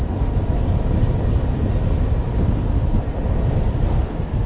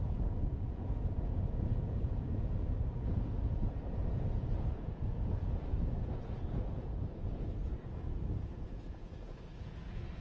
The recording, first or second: first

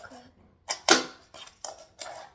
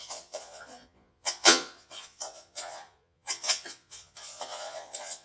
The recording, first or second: first